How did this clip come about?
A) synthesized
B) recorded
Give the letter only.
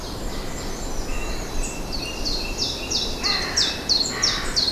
B